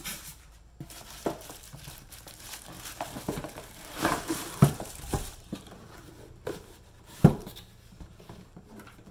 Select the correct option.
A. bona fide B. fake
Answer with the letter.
B